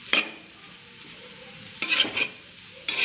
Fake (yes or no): yes